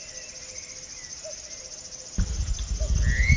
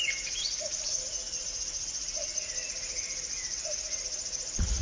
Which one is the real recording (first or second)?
first